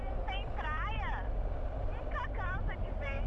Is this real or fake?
fake